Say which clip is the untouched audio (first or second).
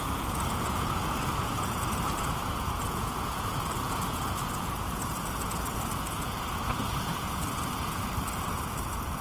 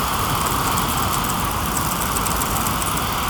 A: second